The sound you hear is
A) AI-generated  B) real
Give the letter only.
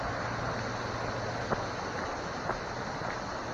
B